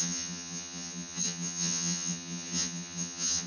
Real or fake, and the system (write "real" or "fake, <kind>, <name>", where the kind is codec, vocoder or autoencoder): fake, vocoder, HiFi-GAN